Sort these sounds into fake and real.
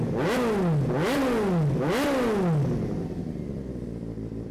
real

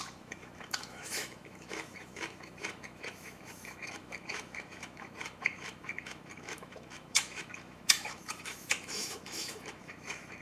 fake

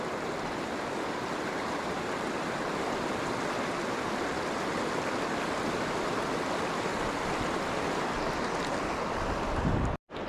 real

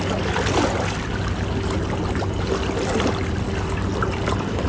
real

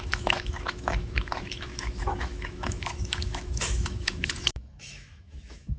fake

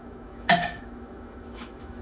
fake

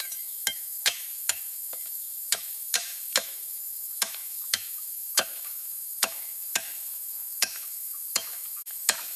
fake